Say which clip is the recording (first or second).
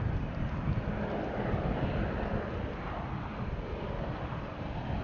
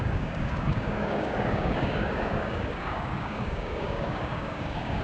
first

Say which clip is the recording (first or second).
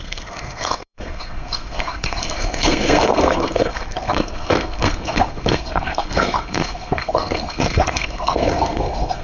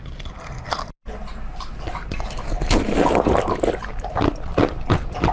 second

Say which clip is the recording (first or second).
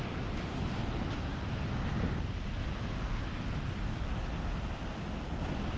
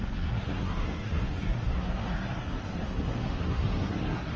first